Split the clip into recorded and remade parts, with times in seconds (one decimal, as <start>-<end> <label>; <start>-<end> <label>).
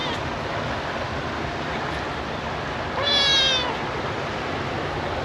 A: 0.0-5.2 recorded